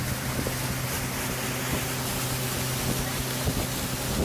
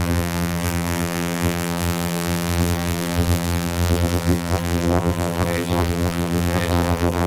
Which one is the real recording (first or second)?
first